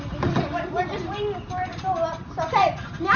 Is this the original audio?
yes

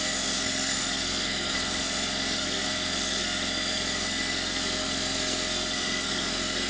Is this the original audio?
no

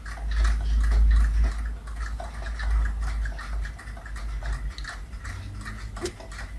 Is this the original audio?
yes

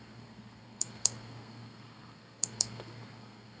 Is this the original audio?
no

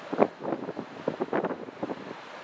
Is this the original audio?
yes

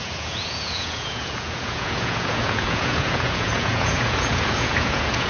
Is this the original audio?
no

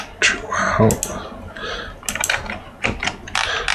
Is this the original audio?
yes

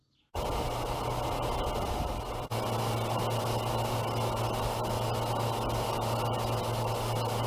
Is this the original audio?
yes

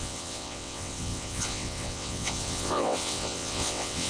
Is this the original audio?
no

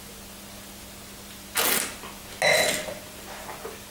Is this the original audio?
yes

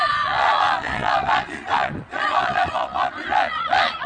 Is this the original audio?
no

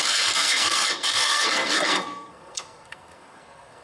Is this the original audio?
no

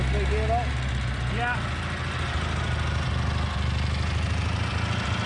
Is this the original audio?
yes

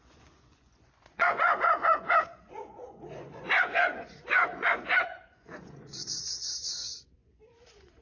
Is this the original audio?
no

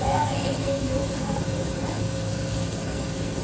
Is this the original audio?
no